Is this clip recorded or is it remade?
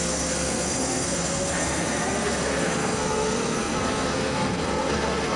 remade